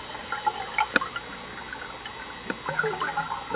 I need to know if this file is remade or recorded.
recorded